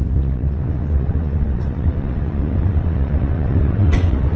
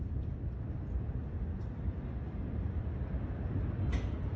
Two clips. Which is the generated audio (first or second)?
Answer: first